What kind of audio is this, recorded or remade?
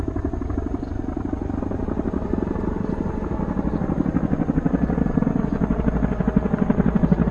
recorded